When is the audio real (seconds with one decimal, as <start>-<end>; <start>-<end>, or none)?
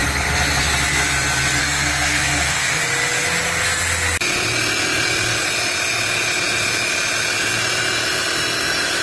0.0-1.6; 2.8-9.0